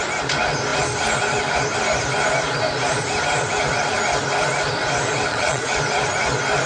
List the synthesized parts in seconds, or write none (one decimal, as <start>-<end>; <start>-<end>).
5.3-5.8